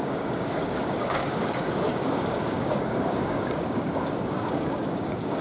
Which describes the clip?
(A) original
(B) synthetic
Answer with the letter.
B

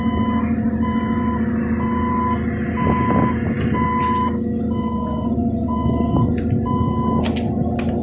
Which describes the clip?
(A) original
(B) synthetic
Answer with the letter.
A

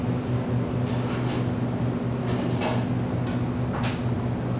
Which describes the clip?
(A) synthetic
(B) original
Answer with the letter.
B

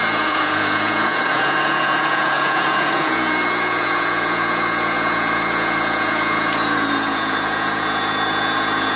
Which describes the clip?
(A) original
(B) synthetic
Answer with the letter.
B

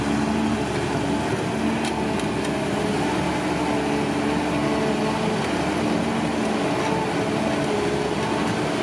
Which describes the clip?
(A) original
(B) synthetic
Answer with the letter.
A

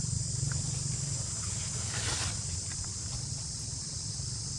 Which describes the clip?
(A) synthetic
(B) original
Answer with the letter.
B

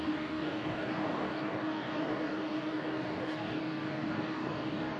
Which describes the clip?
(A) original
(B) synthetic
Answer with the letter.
B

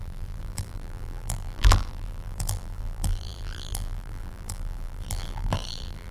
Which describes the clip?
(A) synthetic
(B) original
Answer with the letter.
A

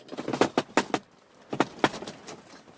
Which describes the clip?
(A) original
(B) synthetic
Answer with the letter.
A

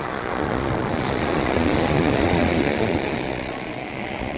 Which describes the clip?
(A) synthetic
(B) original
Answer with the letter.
A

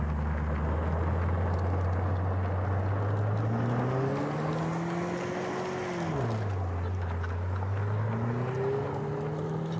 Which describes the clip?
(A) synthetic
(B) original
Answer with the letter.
B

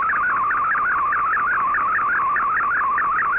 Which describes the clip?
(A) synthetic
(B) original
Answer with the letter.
B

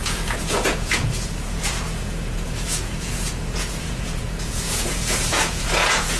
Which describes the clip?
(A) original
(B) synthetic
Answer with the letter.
B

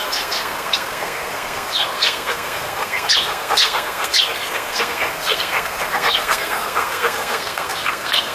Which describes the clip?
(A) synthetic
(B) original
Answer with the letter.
A